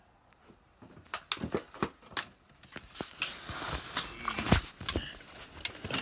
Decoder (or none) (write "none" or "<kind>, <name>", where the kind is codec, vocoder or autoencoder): none